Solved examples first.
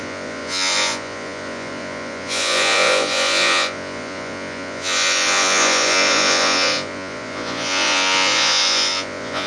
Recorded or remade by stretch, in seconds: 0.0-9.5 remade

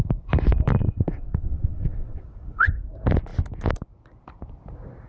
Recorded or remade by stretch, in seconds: 0.0-0.8 recorded; 0.8-2.7 remade; 2.7-5.1 recorded

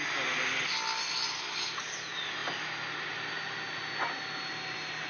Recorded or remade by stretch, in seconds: 0.0-5.1 recorded

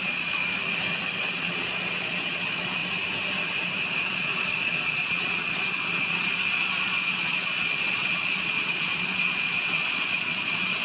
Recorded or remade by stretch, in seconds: 0.0-0.4 remade; 0.4-1.2 recorded; 1.2-2.8 remade; 2.8-4.0 recorded; 4.0-10.8 remade

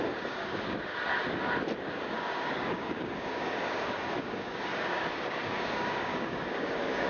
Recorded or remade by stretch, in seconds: 0.0-0.9 remade; 0.9-1.9 recorded; 1.9-7.1 remade